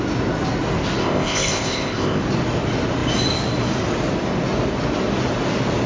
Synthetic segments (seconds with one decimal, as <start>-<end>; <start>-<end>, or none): 1.0-2.2